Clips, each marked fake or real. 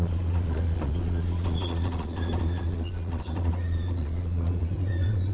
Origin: fake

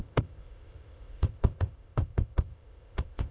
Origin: fake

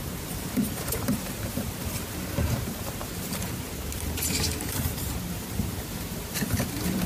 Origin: fake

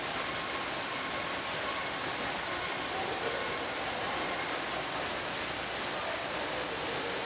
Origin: real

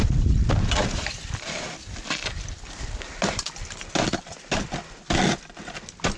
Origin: real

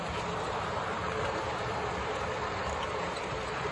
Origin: fake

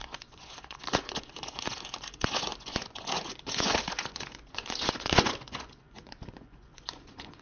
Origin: fake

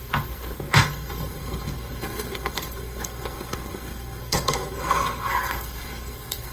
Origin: fake